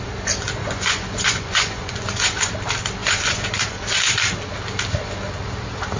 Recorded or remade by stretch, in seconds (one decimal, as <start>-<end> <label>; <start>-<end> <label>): 0.0-0.6 recorded; 0.6-2.5 remade; 2.5-3.0 recorded; 3.0-3.9 remade; 3.9-6.0 recorded